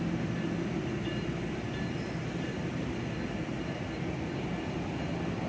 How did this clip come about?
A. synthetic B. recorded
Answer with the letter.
B